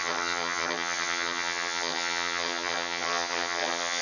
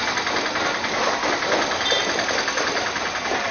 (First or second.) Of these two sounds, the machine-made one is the first